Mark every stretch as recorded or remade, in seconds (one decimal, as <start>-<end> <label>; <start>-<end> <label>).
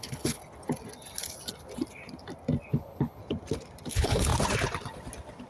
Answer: 0.0-0.4 remade; 0.4-2.7 recorded; 2.7-3.2 remade; 3.2-3.9 recorded; 3.9-4.3 remade; 4.3-5.5 recorded